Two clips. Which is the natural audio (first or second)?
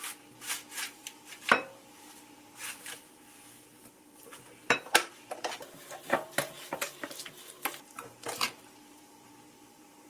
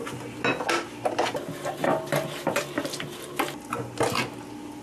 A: second